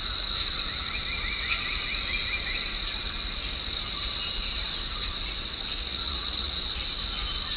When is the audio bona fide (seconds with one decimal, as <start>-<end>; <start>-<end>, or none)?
0.0-5.9; 6.6-7.6